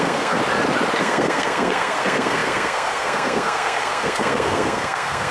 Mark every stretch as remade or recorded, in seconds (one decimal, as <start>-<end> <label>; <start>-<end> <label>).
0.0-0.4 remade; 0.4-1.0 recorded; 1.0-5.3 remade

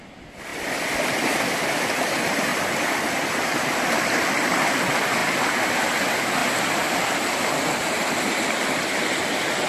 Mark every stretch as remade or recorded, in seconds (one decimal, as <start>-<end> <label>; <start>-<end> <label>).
0.0-0.5 recorded; 0.5-1.7 remade; 1.7-2.5 recorded; 2.5-4.7 remade; 4.7-6.4 recorded; 6.4-9.2 remade; 9.2-9.7 recorded

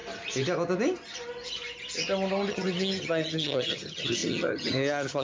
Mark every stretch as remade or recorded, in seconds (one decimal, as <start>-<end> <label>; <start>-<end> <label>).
0.0-2.5 recorded; 2.5-5.2 remade